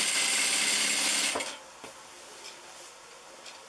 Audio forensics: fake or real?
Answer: real